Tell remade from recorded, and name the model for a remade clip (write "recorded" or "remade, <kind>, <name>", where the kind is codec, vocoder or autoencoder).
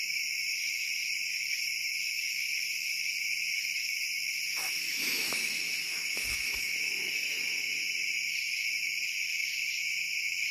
remade, autoencoder, DAC-VAE